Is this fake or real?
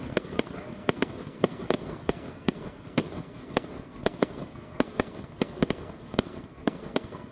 fake